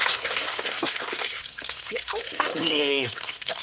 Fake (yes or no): yes